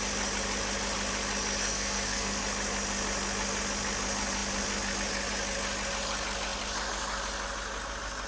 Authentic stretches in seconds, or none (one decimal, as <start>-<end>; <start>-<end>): 0.0-1.6; 2.4-8.3